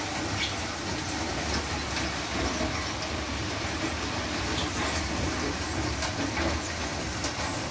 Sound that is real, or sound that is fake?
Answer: real